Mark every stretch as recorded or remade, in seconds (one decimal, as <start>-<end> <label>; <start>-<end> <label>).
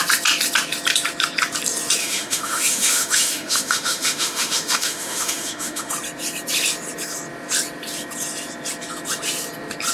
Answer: 0.0-2.0 recorded; 2.0-5.9 remade; 5.9-9.9 recorded